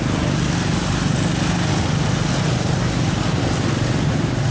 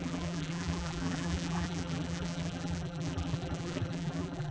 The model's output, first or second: second